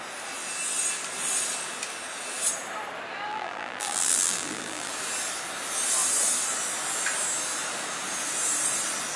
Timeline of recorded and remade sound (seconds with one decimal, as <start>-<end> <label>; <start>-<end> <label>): 0.0-3.3 recorded; 3.3-4.9 remade; 4.9-9.2 recorded